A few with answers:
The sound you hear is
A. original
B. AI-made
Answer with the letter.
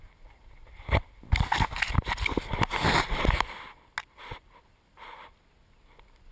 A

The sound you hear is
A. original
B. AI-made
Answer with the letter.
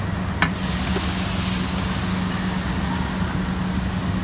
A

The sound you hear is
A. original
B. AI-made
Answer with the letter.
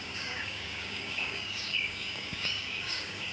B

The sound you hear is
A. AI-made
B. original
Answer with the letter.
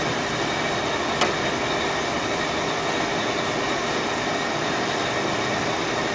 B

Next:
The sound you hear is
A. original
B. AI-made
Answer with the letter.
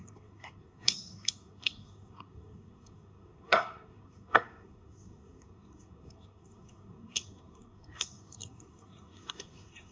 B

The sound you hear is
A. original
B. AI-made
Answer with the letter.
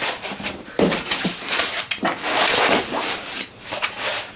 B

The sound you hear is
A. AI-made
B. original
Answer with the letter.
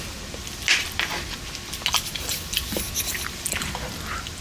B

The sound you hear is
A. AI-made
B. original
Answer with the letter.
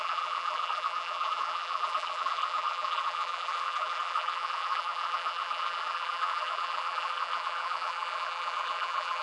A